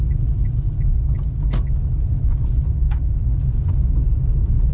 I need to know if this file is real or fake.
real